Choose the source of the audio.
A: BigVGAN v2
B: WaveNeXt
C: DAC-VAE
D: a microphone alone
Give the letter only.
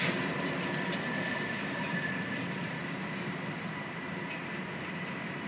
D